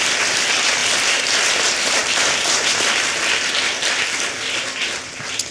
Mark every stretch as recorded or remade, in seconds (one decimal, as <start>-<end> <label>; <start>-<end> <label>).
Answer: 0.0-5.5 recorded